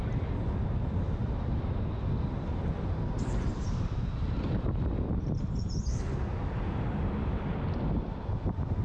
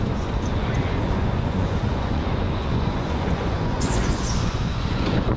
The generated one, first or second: second